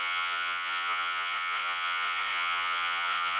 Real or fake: fake